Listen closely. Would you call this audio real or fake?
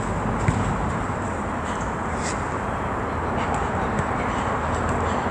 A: real